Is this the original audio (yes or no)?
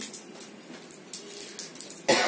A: yes